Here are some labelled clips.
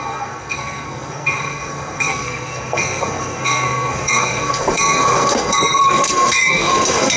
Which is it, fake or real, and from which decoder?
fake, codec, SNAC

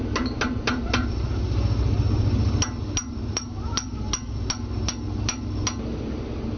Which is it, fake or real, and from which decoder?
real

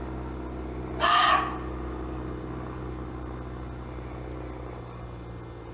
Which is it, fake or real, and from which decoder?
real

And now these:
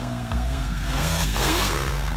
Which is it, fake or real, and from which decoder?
fake, codec, SNAC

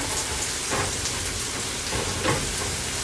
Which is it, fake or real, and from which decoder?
real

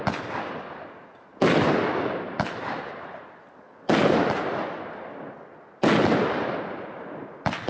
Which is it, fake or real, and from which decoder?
real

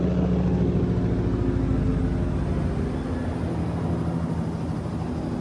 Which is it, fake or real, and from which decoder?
real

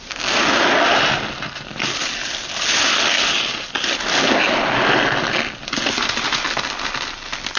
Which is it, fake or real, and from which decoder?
real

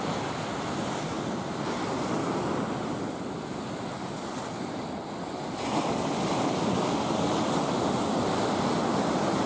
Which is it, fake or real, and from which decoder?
real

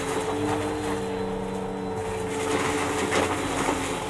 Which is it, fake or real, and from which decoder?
real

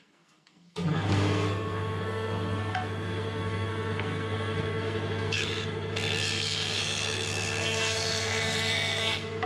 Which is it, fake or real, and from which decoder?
fake, codec, SNAC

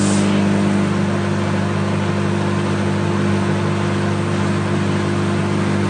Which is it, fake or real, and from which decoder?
real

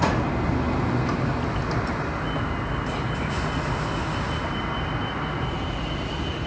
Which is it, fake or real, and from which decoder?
real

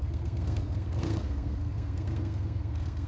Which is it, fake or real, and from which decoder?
fake, codec, SNAC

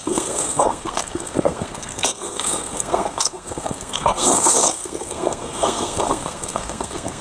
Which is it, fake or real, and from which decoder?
fake, codec, SNAC